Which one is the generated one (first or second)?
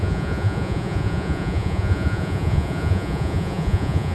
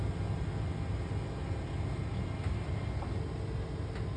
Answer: first